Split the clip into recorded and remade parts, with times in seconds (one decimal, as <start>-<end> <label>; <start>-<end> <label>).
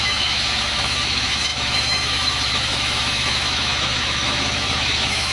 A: 0.0-5.3 remade